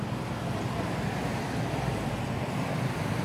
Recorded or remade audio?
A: recorded